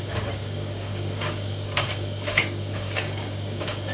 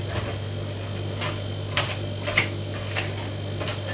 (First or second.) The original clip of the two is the second